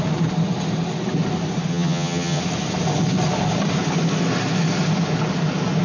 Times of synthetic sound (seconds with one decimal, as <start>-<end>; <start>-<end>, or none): 1.7-2.4